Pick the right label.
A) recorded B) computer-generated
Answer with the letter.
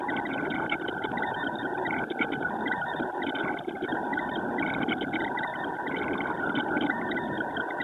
A